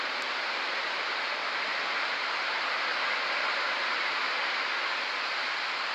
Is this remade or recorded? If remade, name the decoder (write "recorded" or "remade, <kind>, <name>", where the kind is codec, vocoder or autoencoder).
recorded